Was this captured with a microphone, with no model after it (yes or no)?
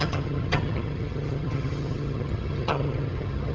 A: no